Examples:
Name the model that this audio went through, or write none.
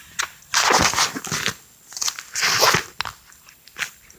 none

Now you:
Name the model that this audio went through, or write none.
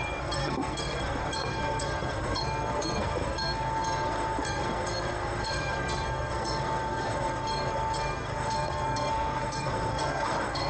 codec, SNAC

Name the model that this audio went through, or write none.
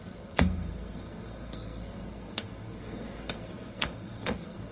codec, SNAC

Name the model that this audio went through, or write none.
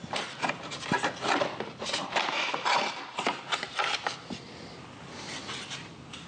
none